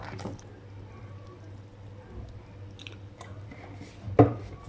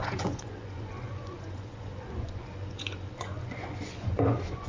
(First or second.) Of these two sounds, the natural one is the first